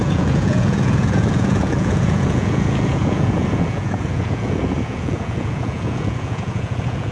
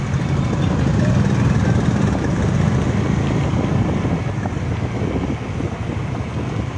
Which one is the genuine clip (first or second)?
second